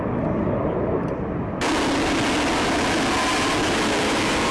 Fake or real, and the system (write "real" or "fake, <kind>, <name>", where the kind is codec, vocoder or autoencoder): real